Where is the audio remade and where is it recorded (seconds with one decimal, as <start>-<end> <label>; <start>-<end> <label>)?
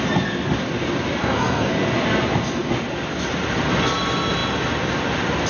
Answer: 0.0-1.2 recorded; 1.2-1.7 remade; 1.7-5.5 recorded